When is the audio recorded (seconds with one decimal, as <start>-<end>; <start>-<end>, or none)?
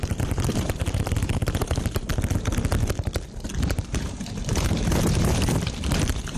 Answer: 2.1-3.5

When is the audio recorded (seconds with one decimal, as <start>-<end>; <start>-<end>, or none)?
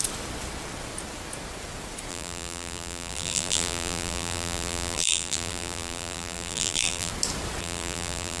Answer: 0.0-2.1; 7.1-7.6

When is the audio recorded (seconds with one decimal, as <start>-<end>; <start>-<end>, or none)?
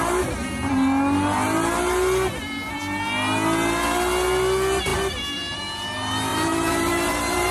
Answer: 0.0-6.3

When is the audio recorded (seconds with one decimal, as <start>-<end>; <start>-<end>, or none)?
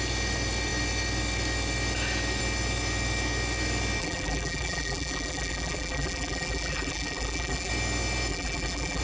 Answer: 0.0-4.0; 7.7-8.3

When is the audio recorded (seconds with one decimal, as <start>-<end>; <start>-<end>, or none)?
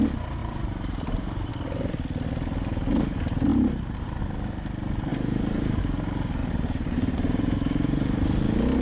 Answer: 0.0-0.4; 1.5-3.5; 4.2-5.1; 5.8-6.4; 8.4-8.8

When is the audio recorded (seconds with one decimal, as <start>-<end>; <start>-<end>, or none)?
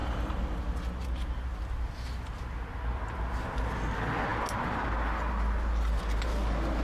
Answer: 0.6-6.8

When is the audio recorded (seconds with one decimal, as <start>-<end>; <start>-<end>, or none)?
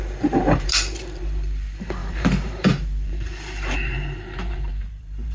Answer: none